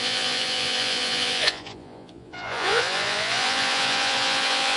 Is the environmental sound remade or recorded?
remade